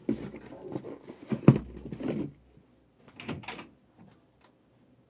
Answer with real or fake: real